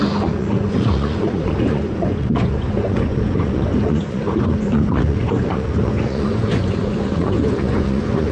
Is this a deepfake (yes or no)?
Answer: yes